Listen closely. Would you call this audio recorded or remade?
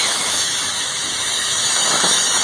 remade